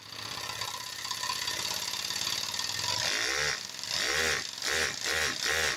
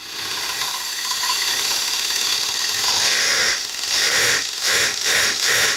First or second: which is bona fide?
first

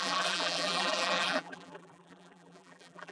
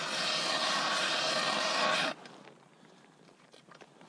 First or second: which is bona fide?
second